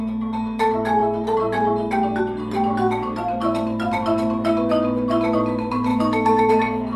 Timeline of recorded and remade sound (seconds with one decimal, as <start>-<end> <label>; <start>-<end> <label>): 0.0-5.9 recorded; 5.9-6.5 remade; 6.5-7.0 recorded